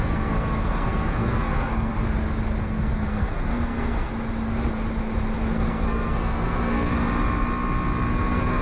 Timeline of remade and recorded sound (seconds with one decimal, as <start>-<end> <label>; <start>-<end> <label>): 0.0-1.9 remade; 1.9-2.6 recorded; 2.6-4.1 remade; 4.1-5.5 recorded; 5.5-6.9 remade; 6.9-8.1 recorded; 8.1-8.6 remade